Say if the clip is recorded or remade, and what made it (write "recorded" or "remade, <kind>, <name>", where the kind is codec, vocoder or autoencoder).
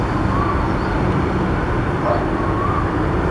recorded